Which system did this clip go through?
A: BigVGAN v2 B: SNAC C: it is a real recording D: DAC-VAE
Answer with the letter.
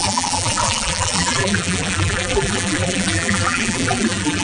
A